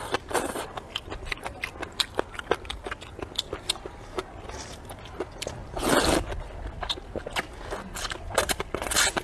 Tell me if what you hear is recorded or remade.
recorded